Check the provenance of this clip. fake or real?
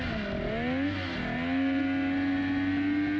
real